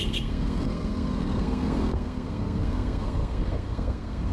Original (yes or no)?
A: no